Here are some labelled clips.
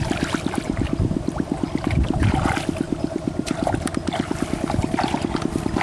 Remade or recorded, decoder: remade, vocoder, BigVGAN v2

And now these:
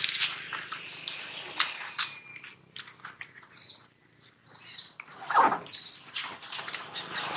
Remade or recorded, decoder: recorded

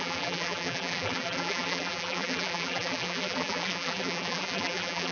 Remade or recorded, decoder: remade, vocoder, BigVGAN v2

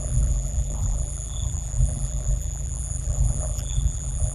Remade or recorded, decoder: remade, vocoder, BigVGAN v2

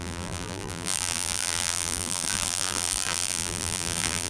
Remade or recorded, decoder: remade, vocoder, BigVGAN v2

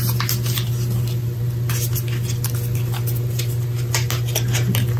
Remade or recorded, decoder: recorded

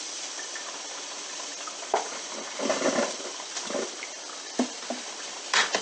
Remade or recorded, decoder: remade, vocoder, BigVGAN v2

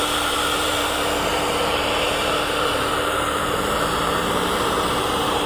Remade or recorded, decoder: remade, vocoder, BigVGAN v2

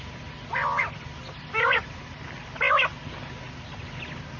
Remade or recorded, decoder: recorded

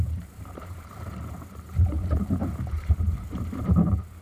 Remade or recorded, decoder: remade, vocoder, BigVGAN v2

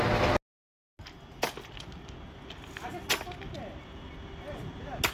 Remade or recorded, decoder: recorded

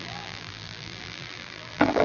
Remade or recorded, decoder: remade, vocoder, BigVGAN v2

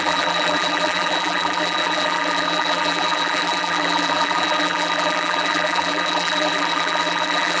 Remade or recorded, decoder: remade, vocoder, BigVGAN v2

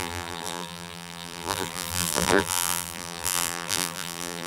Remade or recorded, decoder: remade, vocoder, BigVGAN v2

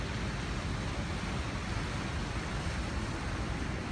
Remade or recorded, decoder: recorded